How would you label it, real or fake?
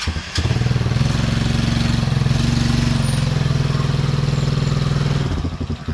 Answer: real